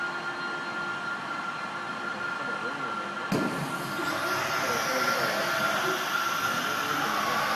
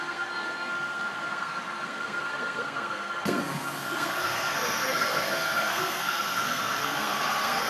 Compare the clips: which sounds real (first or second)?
first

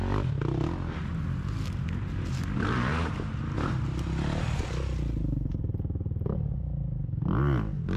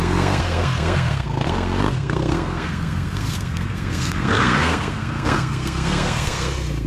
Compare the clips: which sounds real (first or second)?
first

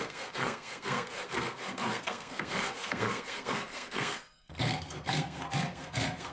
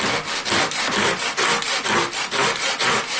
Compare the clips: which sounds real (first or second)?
second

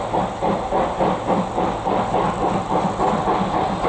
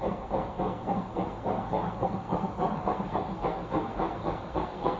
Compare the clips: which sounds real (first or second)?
first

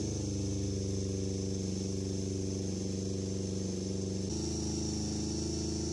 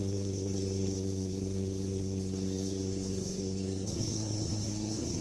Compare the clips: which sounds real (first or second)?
first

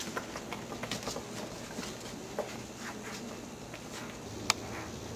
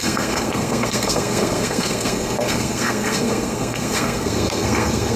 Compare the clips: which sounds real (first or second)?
first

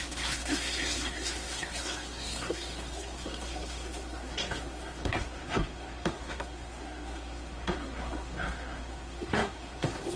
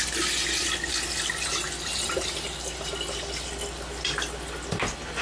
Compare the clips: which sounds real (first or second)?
second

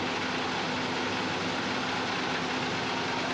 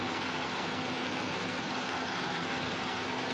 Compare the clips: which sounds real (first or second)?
first